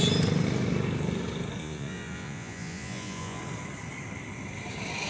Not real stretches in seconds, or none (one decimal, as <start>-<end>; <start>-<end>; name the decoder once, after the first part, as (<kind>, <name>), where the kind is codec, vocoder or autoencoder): 1.6-3.4 (vocoder, Vocos)

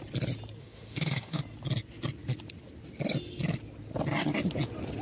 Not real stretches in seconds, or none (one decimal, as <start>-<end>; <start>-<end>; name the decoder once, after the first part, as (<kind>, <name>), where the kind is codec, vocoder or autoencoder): 0.6-1.4 (autoencoder, DAC-VAE)

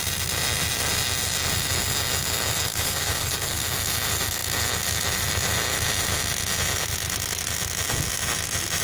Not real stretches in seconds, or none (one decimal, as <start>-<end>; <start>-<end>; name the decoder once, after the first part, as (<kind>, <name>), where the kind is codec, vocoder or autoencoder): 2.7-3.6 (codec, DAC)

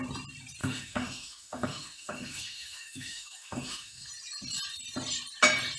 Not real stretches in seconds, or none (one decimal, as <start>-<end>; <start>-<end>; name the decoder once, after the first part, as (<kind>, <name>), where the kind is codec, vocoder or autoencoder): 0.6-4.1 (autoencoder, DAC-VAE)

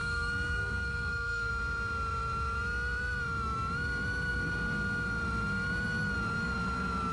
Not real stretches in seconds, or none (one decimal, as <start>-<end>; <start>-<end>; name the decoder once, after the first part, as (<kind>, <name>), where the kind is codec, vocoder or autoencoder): 0.0-1.5 (codec, SNAC)

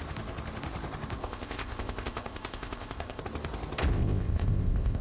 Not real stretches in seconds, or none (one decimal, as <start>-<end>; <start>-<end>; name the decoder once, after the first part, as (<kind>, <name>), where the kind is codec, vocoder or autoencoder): 1.2-3.2 (codec, ZipCodec); 3.9-5.0